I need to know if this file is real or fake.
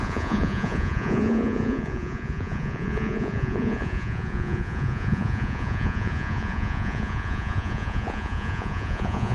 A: fake